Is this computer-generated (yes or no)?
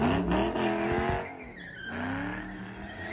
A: no